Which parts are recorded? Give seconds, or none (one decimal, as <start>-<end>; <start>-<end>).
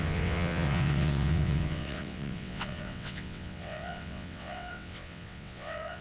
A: none